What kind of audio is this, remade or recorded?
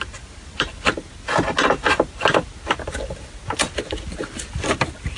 recorded